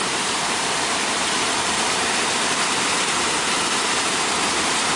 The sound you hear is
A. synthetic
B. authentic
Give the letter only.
A